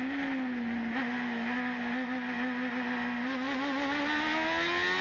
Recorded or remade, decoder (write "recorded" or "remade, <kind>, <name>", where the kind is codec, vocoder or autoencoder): recorded